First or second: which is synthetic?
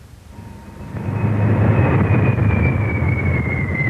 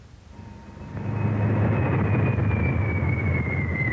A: first